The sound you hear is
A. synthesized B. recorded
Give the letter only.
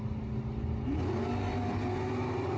B